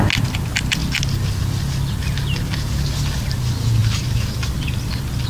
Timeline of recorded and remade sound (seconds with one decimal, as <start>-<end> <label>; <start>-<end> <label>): 0.0-3.8 recorded; 3.8-4.3 remade; 4.3-5.3 recorded